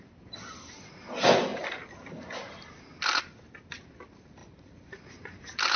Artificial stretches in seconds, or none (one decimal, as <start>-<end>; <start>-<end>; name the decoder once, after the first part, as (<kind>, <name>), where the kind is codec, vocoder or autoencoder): 4.4-5.8 (vocoder, BigVGAN v2)